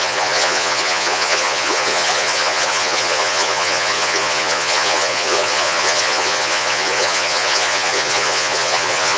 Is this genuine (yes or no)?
no